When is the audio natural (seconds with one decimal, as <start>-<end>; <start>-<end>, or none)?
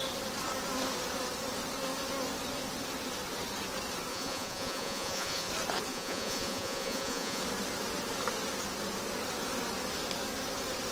0.0-4.1; 5.5-5.9; 7.4-10.9